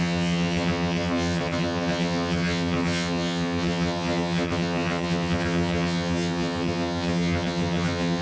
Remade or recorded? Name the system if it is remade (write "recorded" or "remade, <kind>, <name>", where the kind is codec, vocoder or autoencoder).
remade, vocoder, HiFi-GAN